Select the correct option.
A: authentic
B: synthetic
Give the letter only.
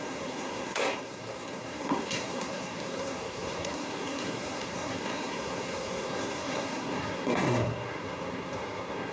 B